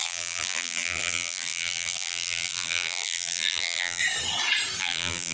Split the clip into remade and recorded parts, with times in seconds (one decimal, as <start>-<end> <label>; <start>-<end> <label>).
0.0-4.0 remade; 4.0-4.8 recorded; 4.8-5.3 remade